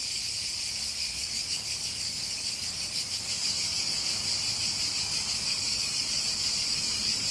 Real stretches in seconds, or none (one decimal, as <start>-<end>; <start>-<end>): 0.0-0.8; 4.3-4.9